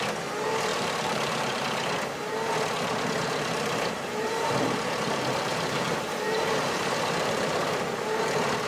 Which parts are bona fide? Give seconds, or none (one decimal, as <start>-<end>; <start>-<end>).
0.0-0.7; 1.6-3.2; 7.6-8.7

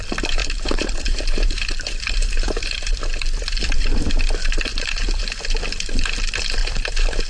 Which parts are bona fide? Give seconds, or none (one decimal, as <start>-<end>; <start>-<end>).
0.0-0.4; 4.1-4.7; 5.2-6.6